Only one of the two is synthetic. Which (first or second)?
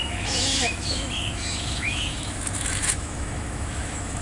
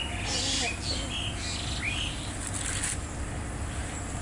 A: first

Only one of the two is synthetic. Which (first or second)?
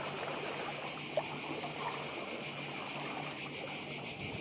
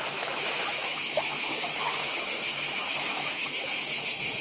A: second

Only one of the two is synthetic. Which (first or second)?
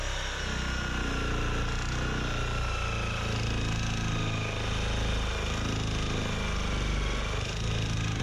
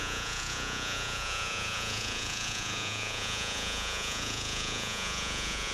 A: second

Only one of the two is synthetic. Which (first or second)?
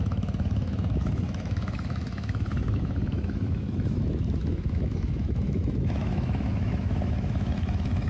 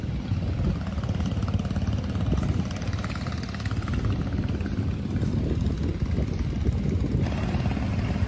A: first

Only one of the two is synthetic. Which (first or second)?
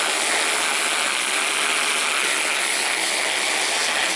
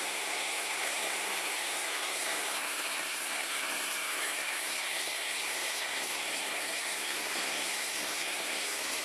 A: second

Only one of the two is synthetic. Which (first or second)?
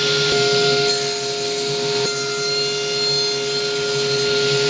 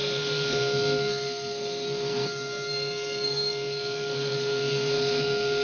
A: second